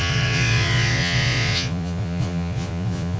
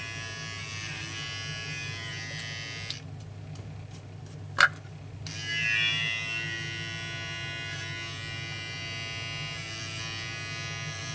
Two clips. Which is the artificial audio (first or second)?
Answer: first